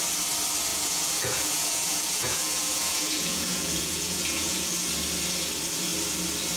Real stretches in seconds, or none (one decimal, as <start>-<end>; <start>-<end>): 0.0-0.7; 4.7-6.6